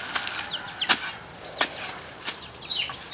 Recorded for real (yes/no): yes